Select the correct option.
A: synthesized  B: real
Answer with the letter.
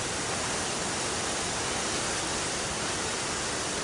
B